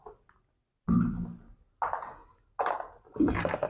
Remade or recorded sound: recorded